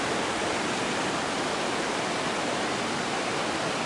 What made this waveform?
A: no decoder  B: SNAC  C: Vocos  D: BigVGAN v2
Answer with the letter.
A